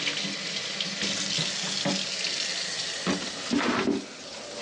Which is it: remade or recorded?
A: recorded